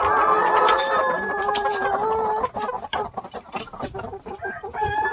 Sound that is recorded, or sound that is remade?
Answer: remade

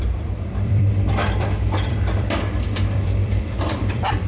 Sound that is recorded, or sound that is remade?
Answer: remade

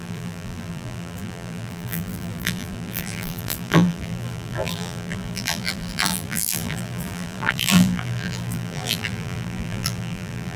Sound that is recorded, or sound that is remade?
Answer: remade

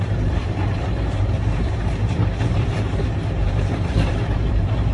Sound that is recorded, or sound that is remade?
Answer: remade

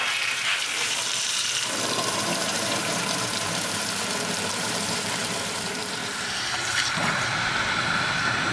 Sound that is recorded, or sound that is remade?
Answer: remade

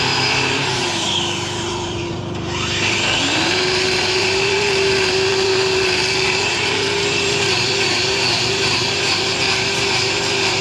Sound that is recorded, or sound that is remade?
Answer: remade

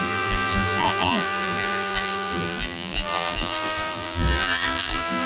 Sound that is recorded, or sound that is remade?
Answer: remade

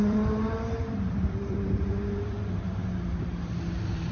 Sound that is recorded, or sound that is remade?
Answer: remade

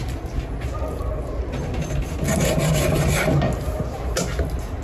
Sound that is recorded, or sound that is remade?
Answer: recorded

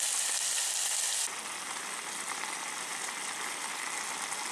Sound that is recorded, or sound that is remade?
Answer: recorded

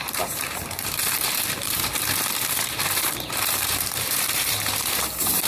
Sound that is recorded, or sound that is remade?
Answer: remade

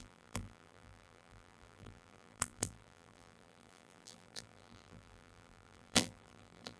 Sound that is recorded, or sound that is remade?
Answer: remade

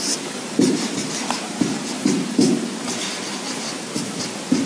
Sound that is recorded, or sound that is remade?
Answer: remade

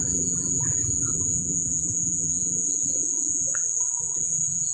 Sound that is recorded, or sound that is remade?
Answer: remade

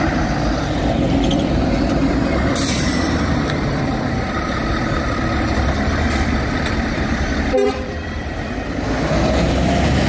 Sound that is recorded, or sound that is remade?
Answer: remade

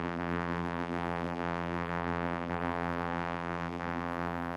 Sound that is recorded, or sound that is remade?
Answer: remade